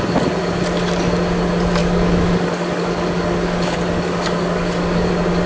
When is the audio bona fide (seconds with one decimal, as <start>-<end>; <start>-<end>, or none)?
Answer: 0.0-1.8; 5.1-5.5